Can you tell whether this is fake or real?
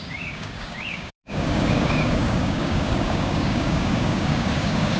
fake